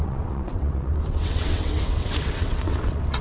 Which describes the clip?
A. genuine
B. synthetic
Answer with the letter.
B